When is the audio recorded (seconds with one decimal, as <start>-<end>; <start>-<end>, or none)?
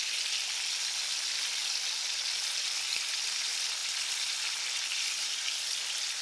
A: 0.0-6.2